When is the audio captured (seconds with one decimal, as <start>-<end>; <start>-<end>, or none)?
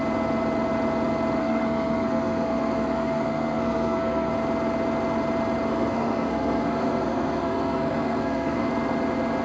0.0-1.4; 4.3-5.7; 8.7-9.4